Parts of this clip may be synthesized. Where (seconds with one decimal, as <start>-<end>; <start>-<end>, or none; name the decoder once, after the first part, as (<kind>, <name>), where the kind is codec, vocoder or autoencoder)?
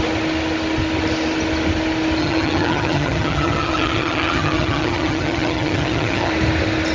2.2-6.3 (vocoder, HiFi-GAN)